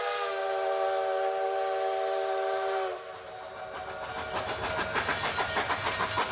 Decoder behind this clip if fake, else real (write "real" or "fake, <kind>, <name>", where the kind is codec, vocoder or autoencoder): real